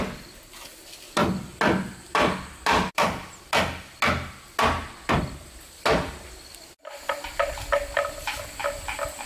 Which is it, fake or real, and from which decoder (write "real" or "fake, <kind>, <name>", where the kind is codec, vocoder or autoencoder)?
real